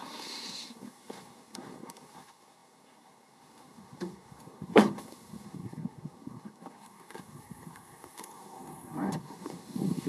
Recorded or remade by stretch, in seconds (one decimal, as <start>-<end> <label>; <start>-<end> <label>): 0.0-10.1 remade